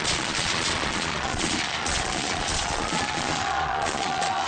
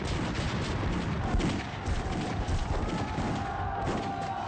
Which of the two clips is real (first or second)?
second